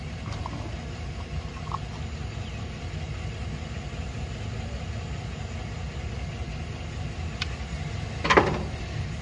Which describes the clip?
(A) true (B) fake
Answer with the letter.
A